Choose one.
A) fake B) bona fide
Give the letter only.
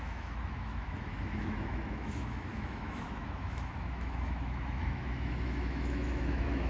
A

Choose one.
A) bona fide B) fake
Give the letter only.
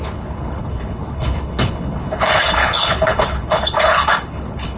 B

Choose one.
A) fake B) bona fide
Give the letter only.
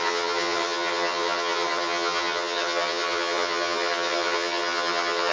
A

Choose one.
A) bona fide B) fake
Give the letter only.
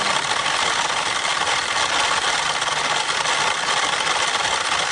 A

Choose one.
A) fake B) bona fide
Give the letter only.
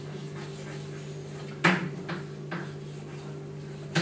B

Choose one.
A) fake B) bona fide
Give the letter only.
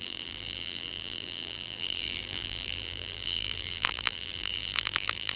A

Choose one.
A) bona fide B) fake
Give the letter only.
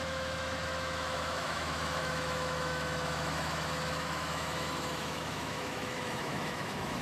B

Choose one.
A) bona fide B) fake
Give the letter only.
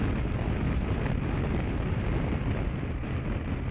A